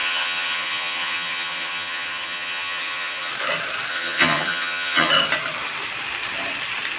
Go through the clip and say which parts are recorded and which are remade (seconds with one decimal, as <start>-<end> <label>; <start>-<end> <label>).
0.0-3.3 remade; 3.3-3.9 recorded; 3.9-5.1 remade; 5.1-7.0 recorded